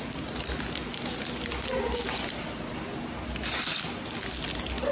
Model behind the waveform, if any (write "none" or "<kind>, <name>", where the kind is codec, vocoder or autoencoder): none